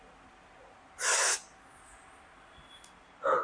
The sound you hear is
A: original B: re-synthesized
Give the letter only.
A